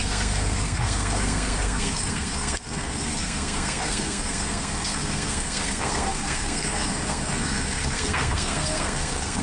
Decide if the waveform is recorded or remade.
remade